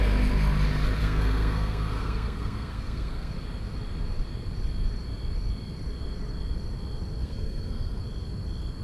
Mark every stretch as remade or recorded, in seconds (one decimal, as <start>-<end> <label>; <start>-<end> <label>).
0.0-1.0 recorded; 1.0-3.3 remade; 3.3-7.2 recorded; 7.2-8.0 remade; 8.0-8.8 recorded